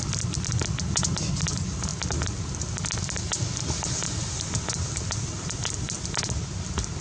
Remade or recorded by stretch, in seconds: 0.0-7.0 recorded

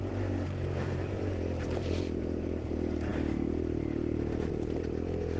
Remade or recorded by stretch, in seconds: 0.0-3.1 remade; 3.1-4.5 recorded; 4.5-5.4 remade

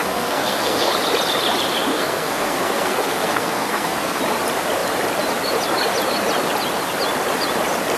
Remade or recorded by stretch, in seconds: 0.0-0.9 remade; 0.9-1.9 recorded; 1.9-4.2 remade; 4.2-8.0 recorded

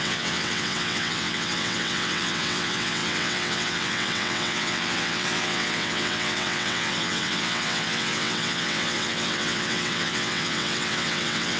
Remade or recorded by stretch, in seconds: 0.0-11.6 remade

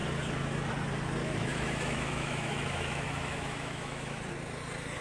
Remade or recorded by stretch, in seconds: 0.0-1.2 recorded; 1.2-4.2 remade; 4.2-5.0 recorded

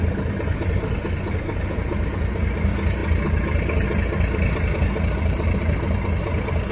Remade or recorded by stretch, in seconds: 0.0-6.7 recorded